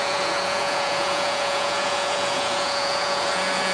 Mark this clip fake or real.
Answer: fake